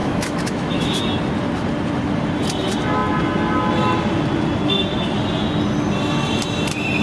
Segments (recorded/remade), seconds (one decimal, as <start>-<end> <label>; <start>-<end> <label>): 0.0-1.0 remade; 1.0-7.0 recorded